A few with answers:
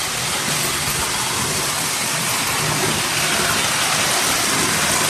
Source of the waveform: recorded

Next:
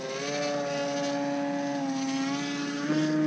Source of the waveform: recorded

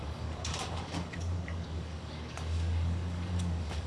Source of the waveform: remade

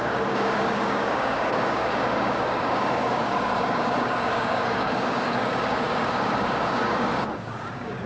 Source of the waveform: remade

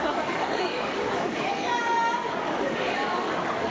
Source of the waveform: remade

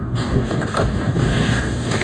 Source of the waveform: remade